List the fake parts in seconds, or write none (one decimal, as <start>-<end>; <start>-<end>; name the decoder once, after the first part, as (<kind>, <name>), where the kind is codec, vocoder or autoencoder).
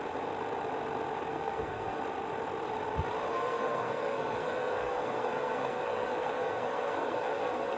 1.3-2.0 (codec, SNAC); 3.3-7.8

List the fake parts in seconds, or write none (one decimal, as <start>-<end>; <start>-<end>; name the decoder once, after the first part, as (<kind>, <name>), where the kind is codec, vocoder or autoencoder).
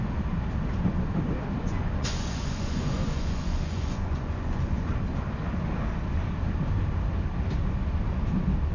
1.6-4.9 (vocoder, Vocos)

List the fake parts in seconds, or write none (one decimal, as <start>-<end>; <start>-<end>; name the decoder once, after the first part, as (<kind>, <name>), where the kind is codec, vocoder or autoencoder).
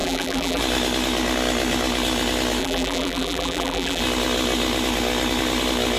0.0-0.6 (vocoder, BigVGAN v2); 2.6-4.0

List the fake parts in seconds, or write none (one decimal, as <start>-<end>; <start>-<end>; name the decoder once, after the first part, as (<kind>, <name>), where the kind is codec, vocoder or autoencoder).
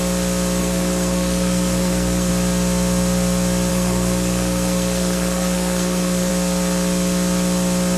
0.6-2.3 (codec, SNAC); 3.7-6.3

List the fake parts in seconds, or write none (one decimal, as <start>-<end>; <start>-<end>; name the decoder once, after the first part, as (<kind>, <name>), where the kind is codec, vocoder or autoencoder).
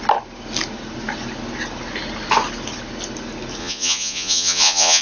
3.6-5.0 (vocoder, Vocos)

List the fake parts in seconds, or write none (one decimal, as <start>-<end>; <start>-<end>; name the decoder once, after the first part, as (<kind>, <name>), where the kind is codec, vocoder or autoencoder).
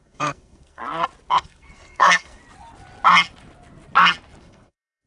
0.0-0.8 (codec, SNAC); 1.3-2.4; 4.4-5.1